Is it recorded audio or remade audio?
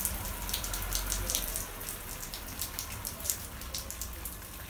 remade